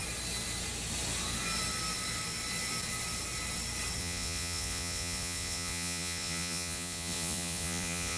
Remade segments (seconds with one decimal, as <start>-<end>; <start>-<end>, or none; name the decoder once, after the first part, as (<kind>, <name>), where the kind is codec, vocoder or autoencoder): 4.0-8.2 (vocoder, Vocos)